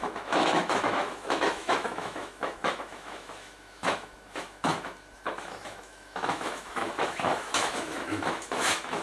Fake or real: fake